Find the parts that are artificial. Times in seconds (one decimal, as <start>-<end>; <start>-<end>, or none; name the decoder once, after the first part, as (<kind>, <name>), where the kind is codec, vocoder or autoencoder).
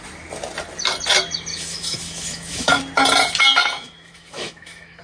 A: 1.5-2.8 (autoencoder, DAC-VAE); 3.6-5.0